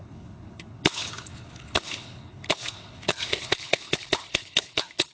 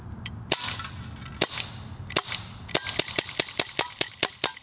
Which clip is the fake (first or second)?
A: first